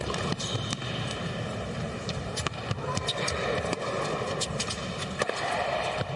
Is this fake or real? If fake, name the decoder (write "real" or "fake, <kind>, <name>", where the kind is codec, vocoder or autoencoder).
fake, vocoder, BigVGAN v2